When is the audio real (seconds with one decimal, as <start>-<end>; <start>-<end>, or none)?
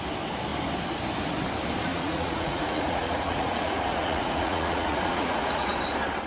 0.0-1.9; 5.7-6.3